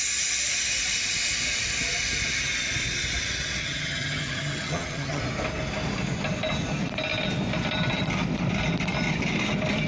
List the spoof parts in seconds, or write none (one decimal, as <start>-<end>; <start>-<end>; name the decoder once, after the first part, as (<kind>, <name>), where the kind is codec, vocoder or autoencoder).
3.6-5.2 (vocoder, HiFi-GAN)